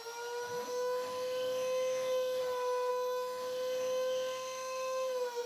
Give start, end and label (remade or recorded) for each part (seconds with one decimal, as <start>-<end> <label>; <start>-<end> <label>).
0.0-0.7 recorded; 0.7-2.4 remade; 2.4-2.9 recorded; 2.9-5.5 remade